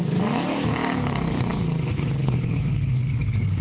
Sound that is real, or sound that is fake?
fake